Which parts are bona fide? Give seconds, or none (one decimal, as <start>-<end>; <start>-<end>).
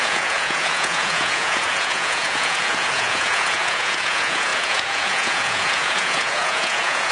none